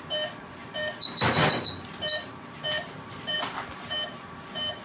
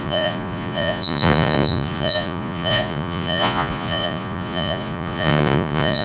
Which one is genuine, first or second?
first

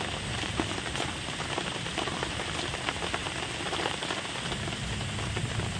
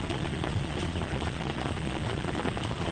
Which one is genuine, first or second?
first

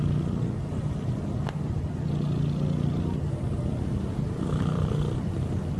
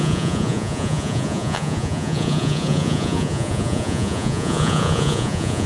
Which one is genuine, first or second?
first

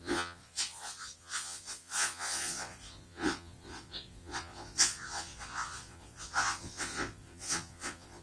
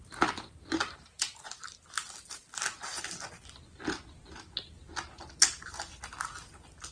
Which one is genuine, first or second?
second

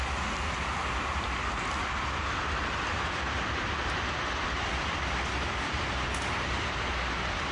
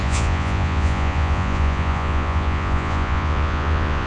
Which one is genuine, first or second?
first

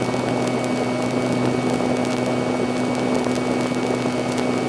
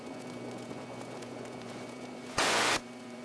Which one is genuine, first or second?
first